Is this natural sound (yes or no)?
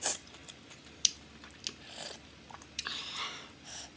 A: yes